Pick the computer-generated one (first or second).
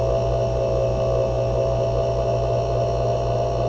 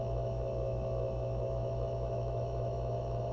second